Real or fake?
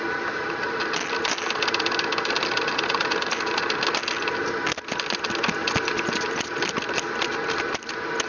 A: real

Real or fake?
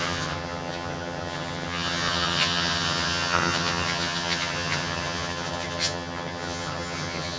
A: fake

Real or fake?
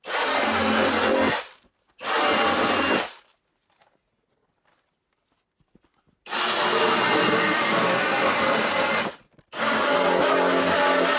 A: real